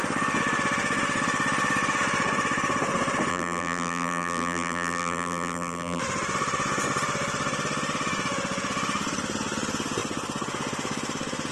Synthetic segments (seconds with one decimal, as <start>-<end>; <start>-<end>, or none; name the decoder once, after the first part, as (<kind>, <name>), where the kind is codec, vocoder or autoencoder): 3.3-6.0 (vocoder, BigVGAN v2)